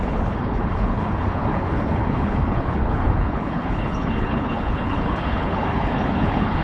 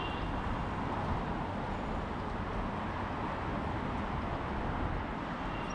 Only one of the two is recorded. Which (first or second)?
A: second